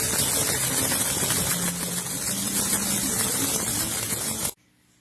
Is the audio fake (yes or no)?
no